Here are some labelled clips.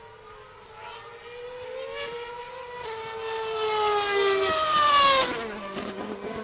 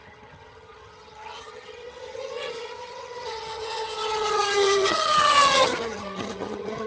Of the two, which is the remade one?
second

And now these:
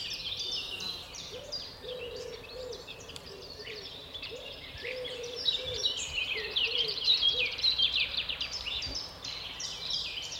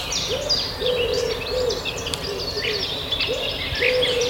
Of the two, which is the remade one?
first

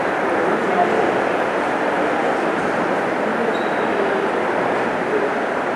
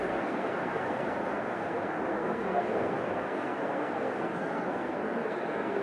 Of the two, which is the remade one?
second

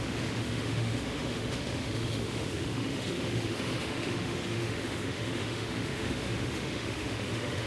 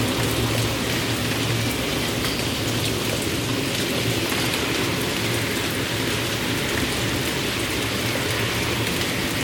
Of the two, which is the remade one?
first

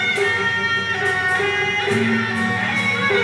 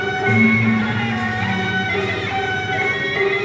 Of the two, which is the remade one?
second